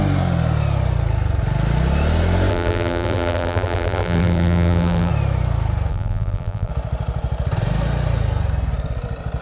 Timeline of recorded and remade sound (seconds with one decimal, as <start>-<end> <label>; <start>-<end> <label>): 0.0-2.5 recorded; 2.5-5.1 remade; 5.1-5.9 recorded; 5.9-6.7 remade; 6.7-9.4 recorded